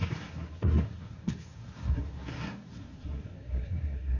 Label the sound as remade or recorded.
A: remade